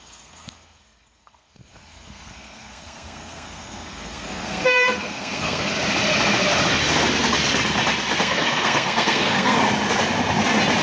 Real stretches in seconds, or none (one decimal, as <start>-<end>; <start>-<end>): 5.7-8.2; 9.6-10.8